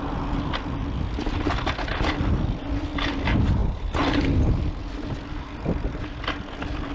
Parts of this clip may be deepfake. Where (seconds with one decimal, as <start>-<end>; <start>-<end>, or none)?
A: none